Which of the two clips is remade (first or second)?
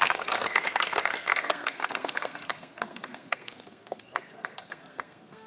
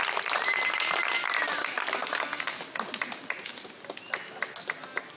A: first